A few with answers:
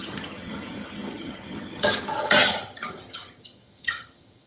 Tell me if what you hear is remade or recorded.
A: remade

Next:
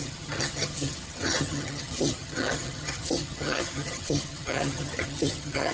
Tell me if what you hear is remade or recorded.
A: remade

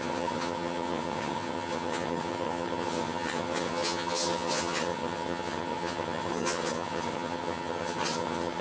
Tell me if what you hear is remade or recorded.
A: remade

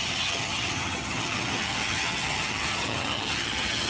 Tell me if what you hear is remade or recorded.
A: remade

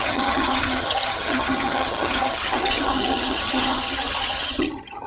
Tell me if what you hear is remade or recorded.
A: remade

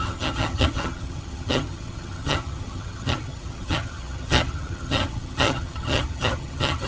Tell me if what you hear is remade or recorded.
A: remade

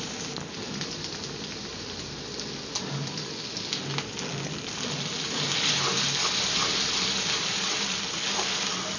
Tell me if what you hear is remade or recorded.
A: recorded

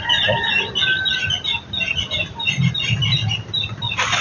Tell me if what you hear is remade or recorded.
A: recorded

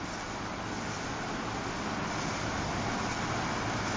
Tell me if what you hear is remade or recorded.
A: recorded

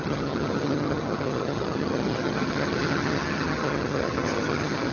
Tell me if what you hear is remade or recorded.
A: remade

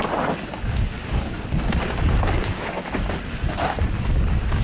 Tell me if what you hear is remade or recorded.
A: recorded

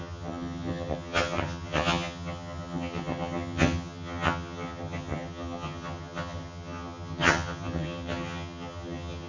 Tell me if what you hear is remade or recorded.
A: remade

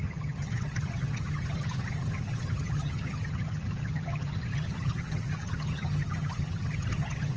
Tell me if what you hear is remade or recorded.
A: remade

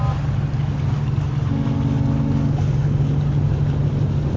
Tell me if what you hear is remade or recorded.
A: recorded